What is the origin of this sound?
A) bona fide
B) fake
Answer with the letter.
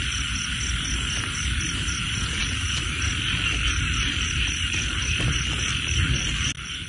A